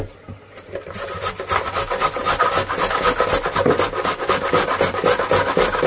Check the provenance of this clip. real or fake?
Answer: real